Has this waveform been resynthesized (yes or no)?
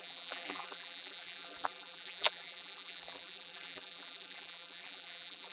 yes